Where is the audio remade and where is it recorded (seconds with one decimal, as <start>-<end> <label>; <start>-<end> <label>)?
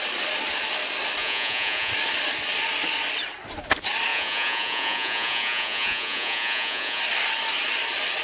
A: 0.0-1.2 recorded; 1.2-1.9 remade; 1.9-4.1 recorded; 4.1-7.0 remade; 7.0-8.2 recorded